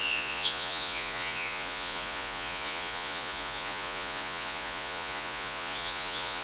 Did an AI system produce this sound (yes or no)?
yes